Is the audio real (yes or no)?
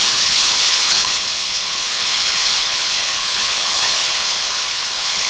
no